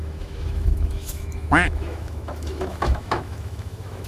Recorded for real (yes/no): no